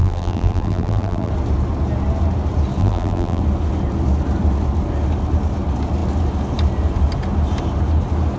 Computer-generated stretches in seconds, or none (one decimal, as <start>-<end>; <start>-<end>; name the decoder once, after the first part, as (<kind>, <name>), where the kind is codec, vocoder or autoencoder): 0.0-1.3 (vocoder, BigVGAN v2); 2.8-3.4